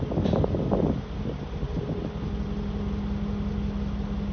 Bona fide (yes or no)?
yes